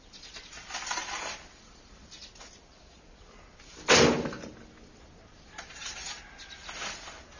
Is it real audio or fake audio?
real